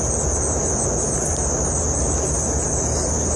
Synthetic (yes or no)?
no